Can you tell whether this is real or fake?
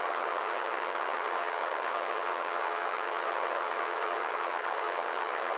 fake